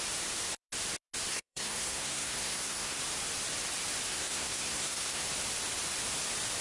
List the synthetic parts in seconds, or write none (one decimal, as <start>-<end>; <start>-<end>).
1.3-3.0; 4.1-5.2